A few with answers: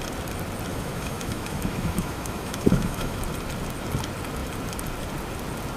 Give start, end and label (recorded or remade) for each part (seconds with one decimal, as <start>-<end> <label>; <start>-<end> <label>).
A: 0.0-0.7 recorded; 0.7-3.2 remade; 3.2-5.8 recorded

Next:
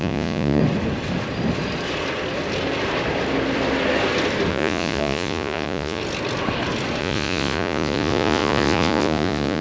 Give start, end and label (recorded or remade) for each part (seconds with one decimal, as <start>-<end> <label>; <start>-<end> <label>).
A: 0.0-0.6 remade; 0.6-4.5 recorded; 4.5-6.0 remade; 6.0-7.0 recorded; 7.0-9.6 remade

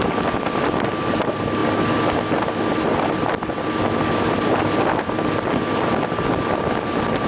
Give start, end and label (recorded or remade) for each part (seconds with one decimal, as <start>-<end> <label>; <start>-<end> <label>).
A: 0.0-7.3 recorded

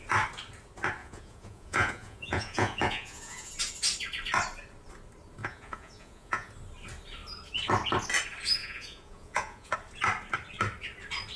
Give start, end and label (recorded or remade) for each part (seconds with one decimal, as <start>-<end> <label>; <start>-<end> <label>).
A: 0.0-1.0 recorded; 1.0-3.5 remade; 3.5-5.4 recorded; 5.4-6.5 remade; 6.5-8.6 recorded; 8.6-9.7 remade; 9.7-11.4 recorded

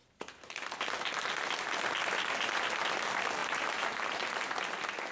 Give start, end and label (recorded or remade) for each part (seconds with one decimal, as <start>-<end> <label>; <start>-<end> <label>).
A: 0.0-3.4 recorded; 3.4-4.3 remade; 4.3-5.1 recorded

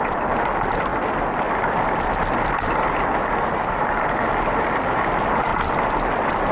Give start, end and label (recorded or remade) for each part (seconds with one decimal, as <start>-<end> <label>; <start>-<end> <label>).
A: 0.0-6.5 recorded